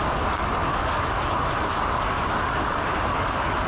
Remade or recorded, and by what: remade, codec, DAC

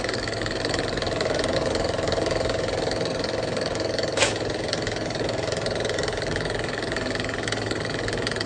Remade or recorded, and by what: remade, codec, DAC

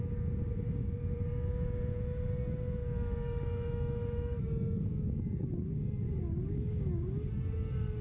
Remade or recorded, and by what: remade, codec, DAC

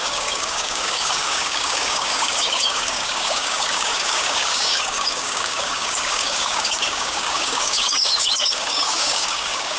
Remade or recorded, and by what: remade, codec, DAC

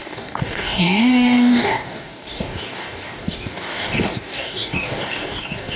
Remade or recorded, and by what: remade, codec, DAC